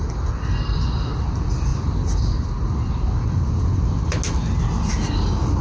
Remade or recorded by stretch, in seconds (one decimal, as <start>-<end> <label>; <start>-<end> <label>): 0.0-5.6 recorded